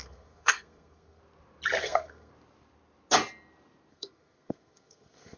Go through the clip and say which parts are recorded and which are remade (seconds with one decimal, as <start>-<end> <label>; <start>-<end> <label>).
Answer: 0.0-1.2 remade; 1.2-1.8 recorded; 1.8-2.3 remade; 2.3-3.9 recorded; 3.9-5.4 remade